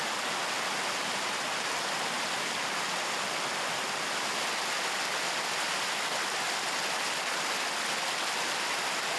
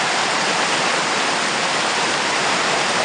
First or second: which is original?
first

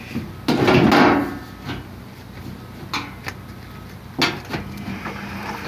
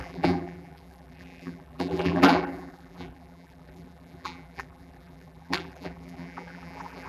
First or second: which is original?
first